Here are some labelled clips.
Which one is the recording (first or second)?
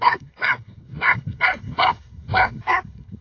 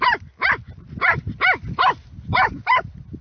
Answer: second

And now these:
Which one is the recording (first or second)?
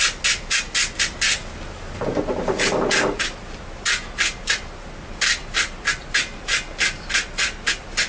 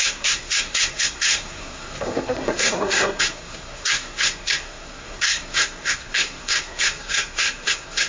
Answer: first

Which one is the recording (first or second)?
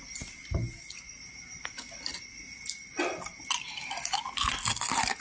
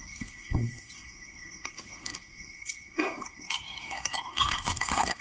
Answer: first